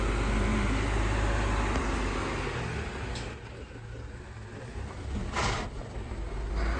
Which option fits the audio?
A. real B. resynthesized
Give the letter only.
A